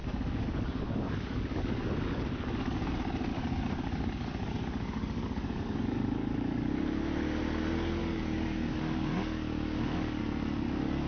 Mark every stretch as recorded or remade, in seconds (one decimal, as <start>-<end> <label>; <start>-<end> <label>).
0.0-2.9 remade; 2.9-3.3 recorded; 3.3-6.7 remade; 6.7-8.0 recorded; 8.0-10.2 remade; 10.2-11.1 recorded